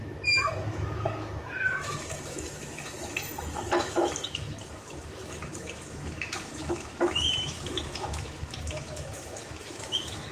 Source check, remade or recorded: remade